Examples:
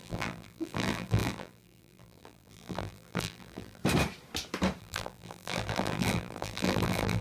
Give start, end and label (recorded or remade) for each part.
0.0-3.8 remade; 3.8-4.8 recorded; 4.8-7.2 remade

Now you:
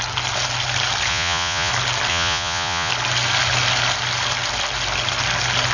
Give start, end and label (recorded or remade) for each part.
0.0-1.1 recorded; 1.1-1.7 remade; 1.7-2.1 recorded; 2.1-2.9 remade; 2.9-5.7 recorded

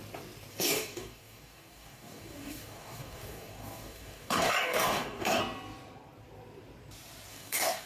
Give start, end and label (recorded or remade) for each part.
0.0-0.5 recorded; 0.5-5.4 remade; 5.4-7.3 recorded; 7.3-7.9 remade

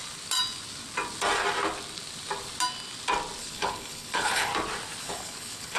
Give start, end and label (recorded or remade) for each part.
0.0-3.4 recorded; 3.4-4.5 remade; 4.5-5.0 recorded; 5.0-5.8 remade

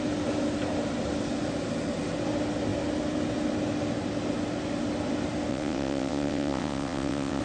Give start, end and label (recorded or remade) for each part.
0.0-5.5 recorded; 5.5-7.4 remade

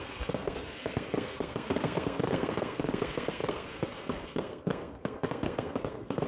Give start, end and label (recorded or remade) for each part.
0.0-6.3 remade

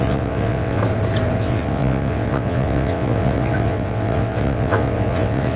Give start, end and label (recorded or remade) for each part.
0.0-0.8 remade; 0.8-1.4 recorded; 1.4-5.6 remade

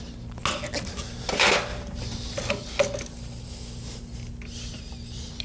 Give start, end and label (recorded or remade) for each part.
0.0-1.7 recorded; 1.7-2.5 remade; 2.5-5.4 recorded